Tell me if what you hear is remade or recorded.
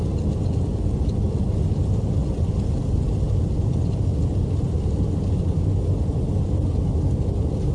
recorded